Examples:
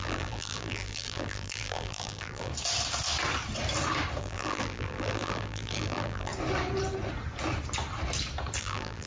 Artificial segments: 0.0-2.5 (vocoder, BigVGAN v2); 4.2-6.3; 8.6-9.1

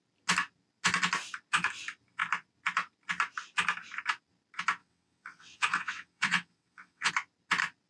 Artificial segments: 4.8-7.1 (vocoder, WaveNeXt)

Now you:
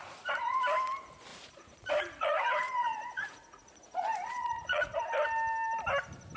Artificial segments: 0.0-0.6 (vocoder, Vocos); 1.3-5.1